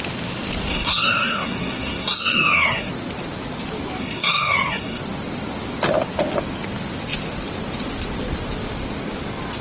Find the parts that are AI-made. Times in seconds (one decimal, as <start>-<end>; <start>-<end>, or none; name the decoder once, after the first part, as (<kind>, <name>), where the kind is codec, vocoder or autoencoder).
0.7-2.9 (codec, SNAC); 4.0-5.0